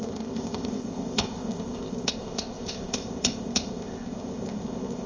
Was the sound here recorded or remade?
remade